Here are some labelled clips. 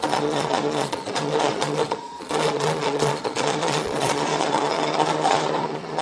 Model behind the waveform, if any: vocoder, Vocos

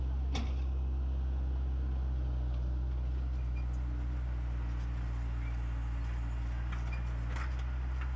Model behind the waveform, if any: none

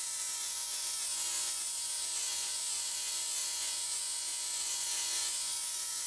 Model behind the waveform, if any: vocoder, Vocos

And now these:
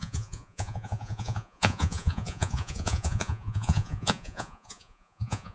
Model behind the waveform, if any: vocoder, Vocos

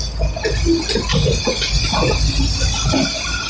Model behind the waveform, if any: none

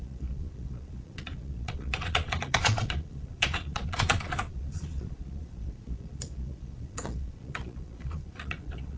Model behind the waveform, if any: vocoder, Vocos